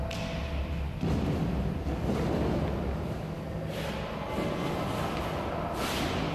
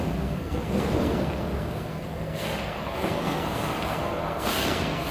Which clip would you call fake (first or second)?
second